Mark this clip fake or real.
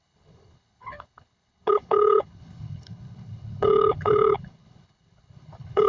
fake